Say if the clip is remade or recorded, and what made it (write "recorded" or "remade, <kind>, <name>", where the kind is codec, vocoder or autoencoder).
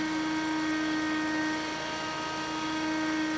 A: recorded